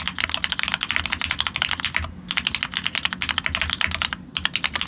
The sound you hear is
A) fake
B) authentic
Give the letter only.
B